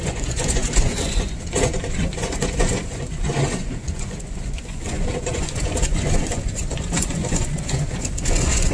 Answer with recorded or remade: remade